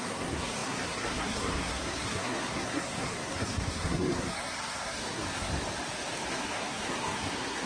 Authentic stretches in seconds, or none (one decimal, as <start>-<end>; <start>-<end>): 5.5-6.3